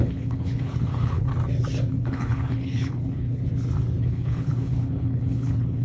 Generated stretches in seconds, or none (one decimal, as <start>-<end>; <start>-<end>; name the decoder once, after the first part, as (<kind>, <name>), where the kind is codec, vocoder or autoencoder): 0.0-1.3 (codec, HILCodec); 1.9-3.4; 4.0-5.8